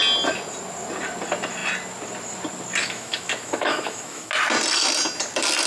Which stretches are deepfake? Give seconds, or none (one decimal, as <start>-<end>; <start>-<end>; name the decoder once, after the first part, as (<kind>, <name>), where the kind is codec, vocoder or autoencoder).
2.8-4.3 (autoencoder, DAC-VAE)